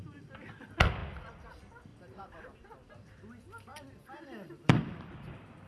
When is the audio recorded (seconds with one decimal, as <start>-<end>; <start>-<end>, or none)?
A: 0.0-1.9; 2.4-3.7